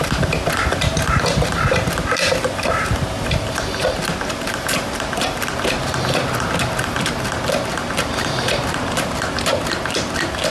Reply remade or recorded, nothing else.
recorded